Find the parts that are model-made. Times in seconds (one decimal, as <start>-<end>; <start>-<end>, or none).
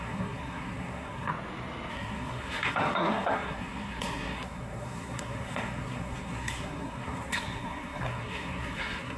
0.0-1.3; 1.9-9.2